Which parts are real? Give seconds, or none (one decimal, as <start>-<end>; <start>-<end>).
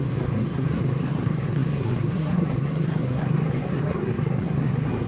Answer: none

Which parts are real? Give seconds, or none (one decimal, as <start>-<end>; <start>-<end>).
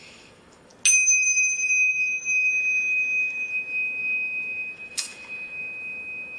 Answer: 0.7-1.9; 2.3-3.5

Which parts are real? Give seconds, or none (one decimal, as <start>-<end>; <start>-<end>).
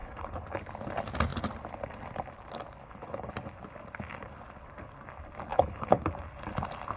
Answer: 0.6-2.8; 3.3-5.5; 6.0-7.0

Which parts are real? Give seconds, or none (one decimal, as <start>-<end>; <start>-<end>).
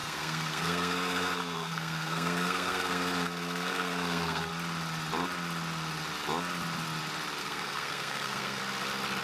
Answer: 4.5-7.4; 8.6-9.2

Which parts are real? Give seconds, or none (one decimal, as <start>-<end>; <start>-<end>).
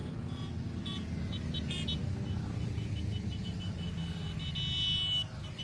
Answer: 0.0-5.6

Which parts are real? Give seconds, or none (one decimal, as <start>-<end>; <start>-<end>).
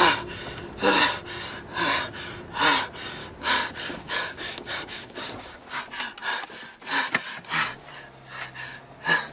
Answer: 0.0-3.2; 5.8-9.3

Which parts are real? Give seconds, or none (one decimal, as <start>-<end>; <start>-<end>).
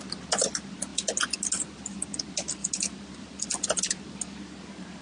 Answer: 0.0-5.0